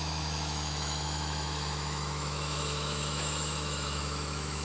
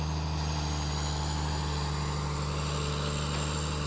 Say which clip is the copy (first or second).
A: first